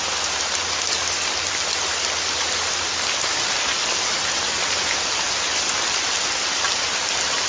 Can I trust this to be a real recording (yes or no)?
yes